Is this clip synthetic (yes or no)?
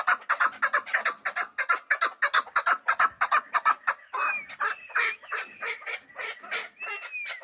no